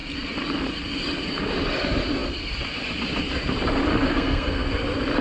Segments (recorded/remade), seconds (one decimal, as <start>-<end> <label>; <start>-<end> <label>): 0.0-3.9 recorded; 3.9-4.8 remade; 4.8-5.2 recorded

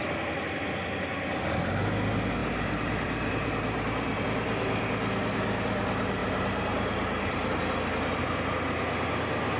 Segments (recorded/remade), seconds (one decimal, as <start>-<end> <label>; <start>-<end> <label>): 0.0-2.4 recorded; 2.4-4.2 remade; 4.2-6.2 recorded; 6.2-7.6 remade; 7.6-9.6 recorded

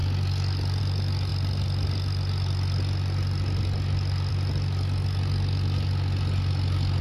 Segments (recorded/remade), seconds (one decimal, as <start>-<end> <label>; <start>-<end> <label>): 0.0-7.0 recorded

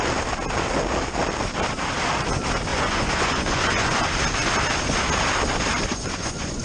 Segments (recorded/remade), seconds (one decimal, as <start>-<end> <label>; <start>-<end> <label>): 0.0-2.7 recorded; 2.7-4.0 remade; 4.0-5.9 recorded; 5.9-6.6 remade

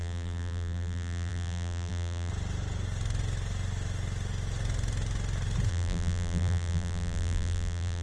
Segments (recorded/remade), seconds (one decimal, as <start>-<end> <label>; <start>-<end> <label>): 0.0-2.3 remade; 2.3-5.7 recorded; 5.7-8.0 remade

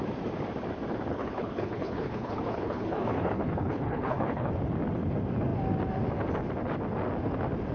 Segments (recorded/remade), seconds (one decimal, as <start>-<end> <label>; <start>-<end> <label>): 0.0-1.1 recorded; 1.1-4.5 remade; 4.5-7.7 recorded